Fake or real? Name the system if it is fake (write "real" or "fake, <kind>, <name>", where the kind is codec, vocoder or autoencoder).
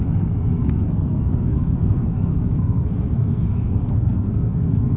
fake, codec, SNAC